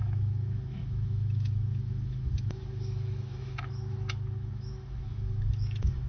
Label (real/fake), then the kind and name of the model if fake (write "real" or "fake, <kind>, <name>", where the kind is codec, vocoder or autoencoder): fake, autoencoder, DAC-VAE